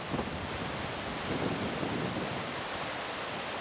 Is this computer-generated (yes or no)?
no